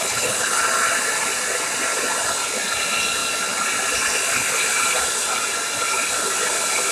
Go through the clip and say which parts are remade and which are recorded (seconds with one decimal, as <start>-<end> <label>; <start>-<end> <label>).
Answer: 0.0-0.6 remade; 0.6-6.9 recorded